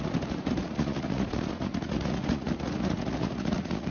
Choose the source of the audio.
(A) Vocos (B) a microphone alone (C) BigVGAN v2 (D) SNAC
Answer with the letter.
A